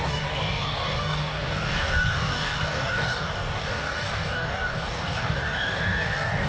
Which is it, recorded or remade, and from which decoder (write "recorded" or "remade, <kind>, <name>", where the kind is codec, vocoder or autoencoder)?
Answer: remade, codec, DAC